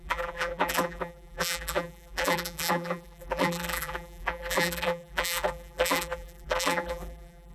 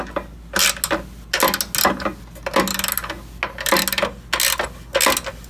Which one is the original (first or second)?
second